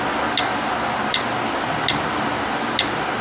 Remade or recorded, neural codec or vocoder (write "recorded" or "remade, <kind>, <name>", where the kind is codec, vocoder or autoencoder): recorded